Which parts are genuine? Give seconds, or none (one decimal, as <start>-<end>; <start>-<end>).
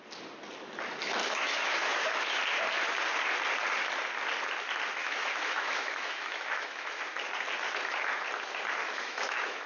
0.0-1.2; 2.4-5.0; 7.0-8.8